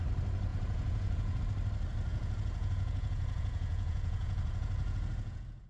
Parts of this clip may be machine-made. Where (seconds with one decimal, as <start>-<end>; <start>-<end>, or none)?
0.5-1.4; 2.1-5.7